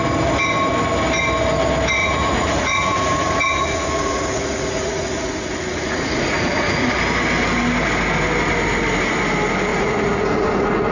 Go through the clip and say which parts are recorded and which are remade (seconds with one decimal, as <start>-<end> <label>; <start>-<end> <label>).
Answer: 0.0-2.0 recorded; 2.0-7.0 remade; 7.0-9.7 recorded; 9.7-10.9 remade